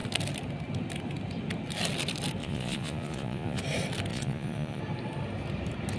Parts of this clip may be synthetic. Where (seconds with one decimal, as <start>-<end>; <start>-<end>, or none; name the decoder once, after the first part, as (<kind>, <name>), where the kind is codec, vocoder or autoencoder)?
2.4-3.6 (vocoder, Vocos); 4.1-4.8